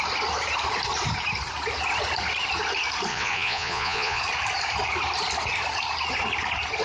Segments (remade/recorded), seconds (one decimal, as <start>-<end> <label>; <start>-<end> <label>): 0.0-3.1 recorded; 3.1-4.2 remade; 4.2-6.8 recorded